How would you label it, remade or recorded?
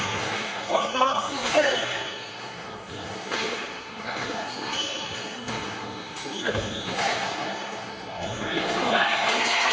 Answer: remade